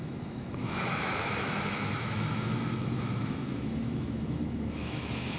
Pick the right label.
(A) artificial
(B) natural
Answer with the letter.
A